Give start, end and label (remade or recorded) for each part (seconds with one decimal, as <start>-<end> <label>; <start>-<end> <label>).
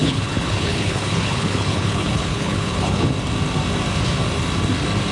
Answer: 0.0-3.1 remade; 3.1-5.1 recorded